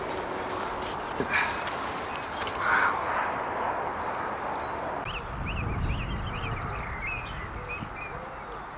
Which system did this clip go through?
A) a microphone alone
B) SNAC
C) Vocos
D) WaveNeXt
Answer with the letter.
A